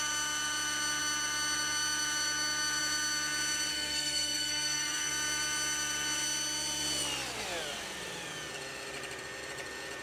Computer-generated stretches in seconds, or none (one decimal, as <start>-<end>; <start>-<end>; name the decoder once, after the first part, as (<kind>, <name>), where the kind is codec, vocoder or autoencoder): 3.7-5.1 (codec, SNAC)